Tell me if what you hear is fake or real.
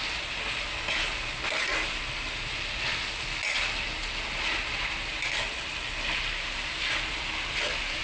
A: real